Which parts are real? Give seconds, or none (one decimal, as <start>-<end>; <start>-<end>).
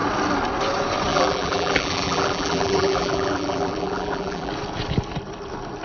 0.0-1.1; 4.5-5.8